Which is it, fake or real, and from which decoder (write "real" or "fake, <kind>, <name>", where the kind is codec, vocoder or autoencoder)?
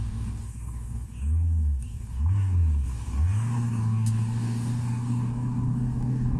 fake, codec, DAC